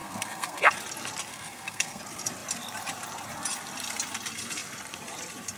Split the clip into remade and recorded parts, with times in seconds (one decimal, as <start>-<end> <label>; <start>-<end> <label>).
0.0-0.7 remade; 0.7-1.3 recorded; 1.3-2.0 remade; 2.0-5.6 recorded